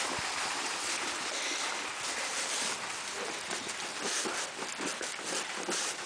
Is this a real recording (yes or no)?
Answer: yes